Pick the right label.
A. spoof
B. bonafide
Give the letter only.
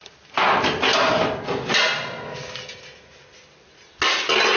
B